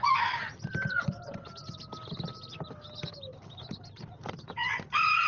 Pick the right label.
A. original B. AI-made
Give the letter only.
A